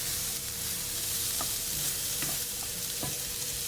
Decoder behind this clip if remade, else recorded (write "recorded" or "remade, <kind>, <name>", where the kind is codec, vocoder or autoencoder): remade, vocoder, BigVGAN v2